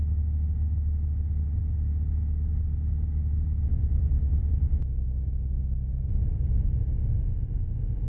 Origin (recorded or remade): recorded